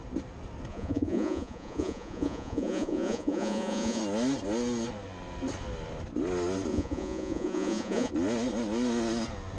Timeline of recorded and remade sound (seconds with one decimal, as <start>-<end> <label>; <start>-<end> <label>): 0.0-0.7 recorded; 0.7-4.0 remade; 4.0-6.7 recorded; 6.7-8.1 remade; 8.1-9.6 recorded